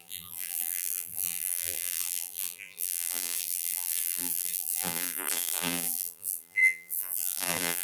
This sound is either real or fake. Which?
fake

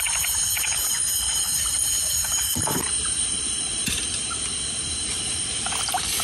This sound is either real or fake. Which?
fake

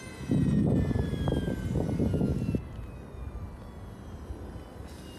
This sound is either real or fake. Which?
real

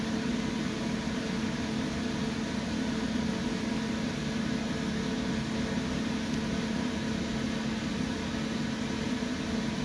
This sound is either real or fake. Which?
real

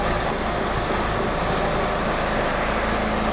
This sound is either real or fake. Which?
real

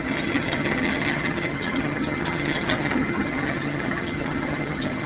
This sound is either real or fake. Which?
fake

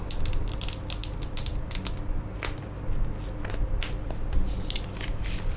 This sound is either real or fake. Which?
real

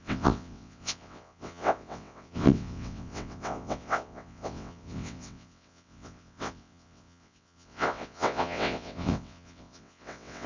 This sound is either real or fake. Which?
fake